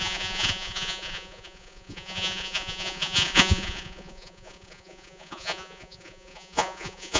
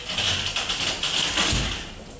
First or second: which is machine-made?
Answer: first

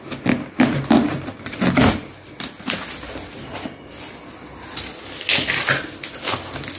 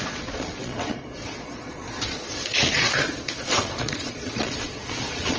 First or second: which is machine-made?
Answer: second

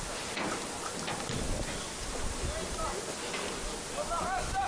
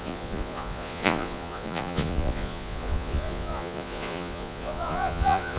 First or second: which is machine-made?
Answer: second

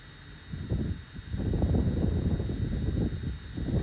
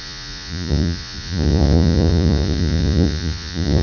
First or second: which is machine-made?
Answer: second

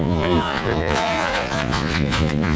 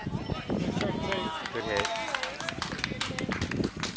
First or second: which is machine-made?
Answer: first